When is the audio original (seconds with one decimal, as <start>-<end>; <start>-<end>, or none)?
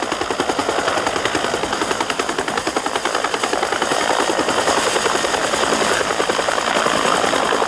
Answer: 0.0-7.7